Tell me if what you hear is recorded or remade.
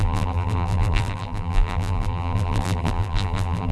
remade